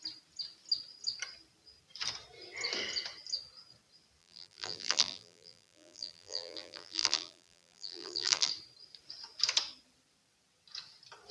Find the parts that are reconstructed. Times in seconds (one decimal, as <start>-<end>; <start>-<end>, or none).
4.2-8.5